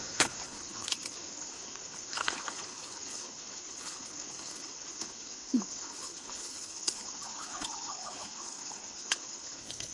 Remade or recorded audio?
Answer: remade